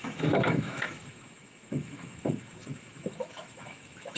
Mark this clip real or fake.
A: fake